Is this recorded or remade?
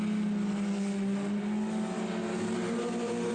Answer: recorded